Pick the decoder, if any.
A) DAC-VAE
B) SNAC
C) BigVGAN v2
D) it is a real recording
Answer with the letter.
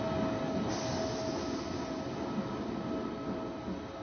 D